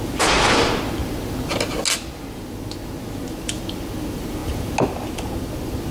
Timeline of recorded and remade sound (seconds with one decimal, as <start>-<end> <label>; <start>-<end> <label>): 0.0-5.9 recorded